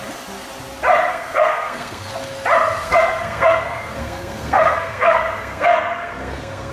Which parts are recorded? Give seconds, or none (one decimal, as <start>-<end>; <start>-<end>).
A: 0.0-1.1; 2.1-2.8